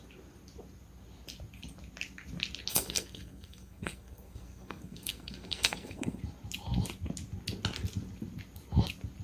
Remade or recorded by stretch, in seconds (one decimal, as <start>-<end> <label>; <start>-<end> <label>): 0.0-2.7 recorded; 2.7-6.2 remade; 6.2-9.2 recorded